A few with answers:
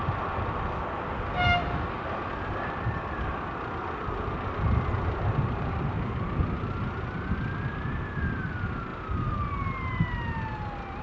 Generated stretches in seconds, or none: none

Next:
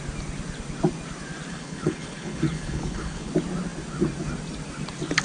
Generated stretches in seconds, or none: 1.5-3.3 (codec, HILCodec)

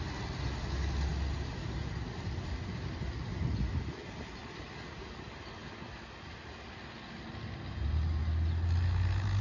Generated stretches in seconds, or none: none